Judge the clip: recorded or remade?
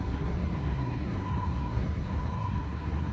remade